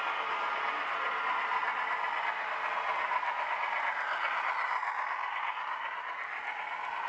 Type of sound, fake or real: real